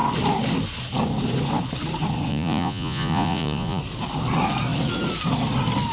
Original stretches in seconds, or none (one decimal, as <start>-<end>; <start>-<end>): 0.0-2.3; 3.8-5.9